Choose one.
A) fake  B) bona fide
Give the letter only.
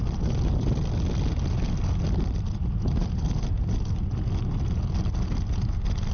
B